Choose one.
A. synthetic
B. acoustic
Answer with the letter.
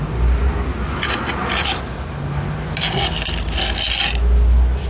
B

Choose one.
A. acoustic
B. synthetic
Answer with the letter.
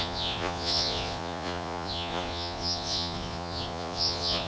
B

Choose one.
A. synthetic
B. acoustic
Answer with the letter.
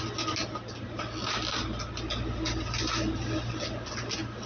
B